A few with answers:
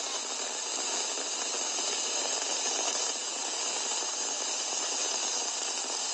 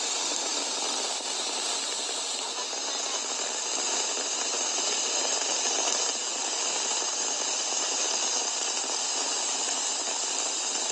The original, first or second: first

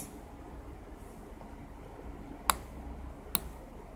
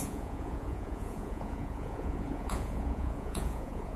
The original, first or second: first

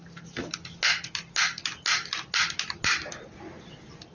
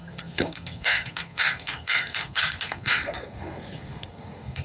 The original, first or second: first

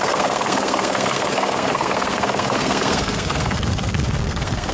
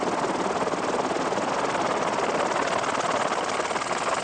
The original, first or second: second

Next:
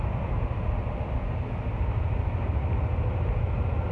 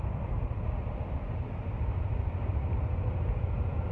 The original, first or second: first